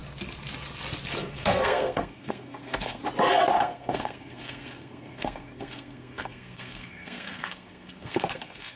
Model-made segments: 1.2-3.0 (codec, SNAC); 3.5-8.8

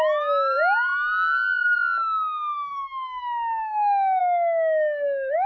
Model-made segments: none

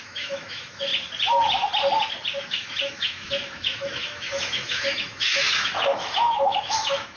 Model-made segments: 0.0-0.9 (autoencoder, DAC-VAE); 2.4-7.2

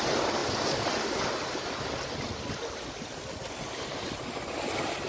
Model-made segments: none

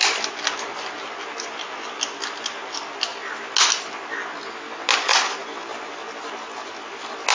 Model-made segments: none

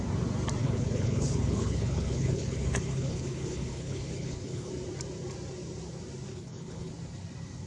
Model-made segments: 0.6-4.7 (codec, HILCodec); 6.3-6.9